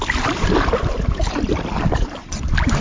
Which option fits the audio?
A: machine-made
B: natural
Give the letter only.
B